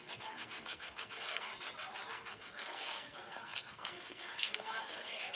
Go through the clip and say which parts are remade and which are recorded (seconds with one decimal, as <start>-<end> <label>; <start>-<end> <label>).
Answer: 0.0-1.5 remade; 1.5-2.1 recorded; 2.1-5.3 remade